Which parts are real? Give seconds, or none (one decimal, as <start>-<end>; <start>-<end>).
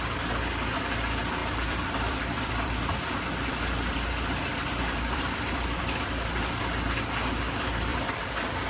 0.0-1.4; 6.6-7.9